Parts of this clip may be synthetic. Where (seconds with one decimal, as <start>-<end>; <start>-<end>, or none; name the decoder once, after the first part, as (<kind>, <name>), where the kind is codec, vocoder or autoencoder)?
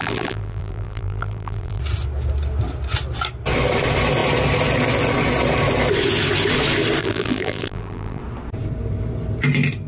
0.0-1.8 (vocoder, BigVGAN v2); 7.0-8.2